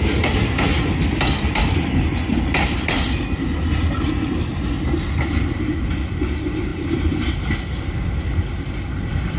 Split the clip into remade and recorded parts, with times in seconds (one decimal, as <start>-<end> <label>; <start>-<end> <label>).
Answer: 0.0-6.7 recorded; 6.7-7.3 remade; 7.3-9.4 recorded